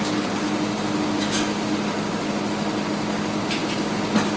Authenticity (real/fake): real